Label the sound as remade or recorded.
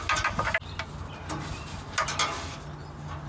recorded